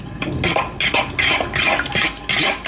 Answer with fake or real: real